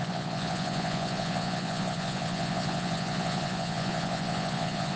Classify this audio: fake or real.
fake